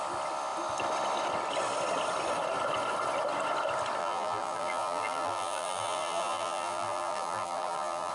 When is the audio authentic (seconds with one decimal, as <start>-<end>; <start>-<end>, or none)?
0.0-4.0